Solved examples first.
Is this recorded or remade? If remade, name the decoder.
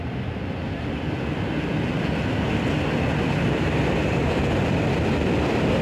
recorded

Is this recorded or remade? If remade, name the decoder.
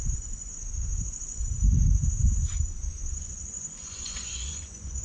remade, vocoder, Vocos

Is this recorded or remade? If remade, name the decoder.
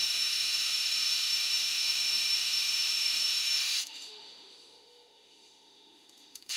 remade, autoencoder, DAC-VAE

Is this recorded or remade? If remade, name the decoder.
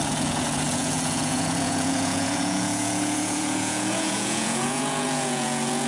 remade, vocoder, Vocos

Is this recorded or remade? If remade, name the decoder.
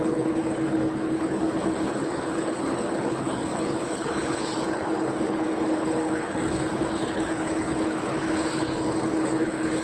remade, codec, HILCodec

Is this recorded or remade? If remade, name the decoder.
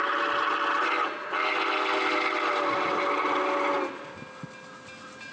recorded